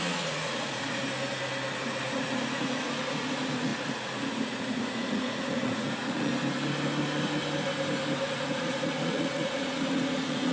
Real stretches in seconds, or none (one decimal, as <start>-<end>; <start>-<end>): 1.0-2.0; 6.3-8.3